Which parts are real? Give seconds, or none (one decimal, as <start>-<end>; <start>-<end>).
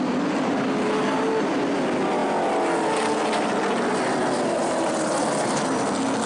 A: 0.0-6.3